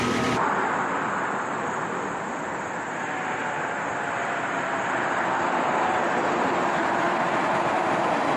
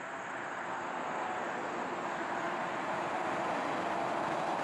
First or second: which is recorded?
second